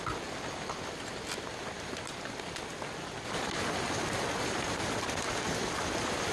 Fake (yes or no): no